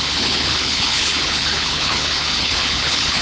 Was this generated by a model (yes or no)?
yes